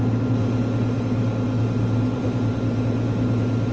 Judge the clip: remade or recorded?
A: recorded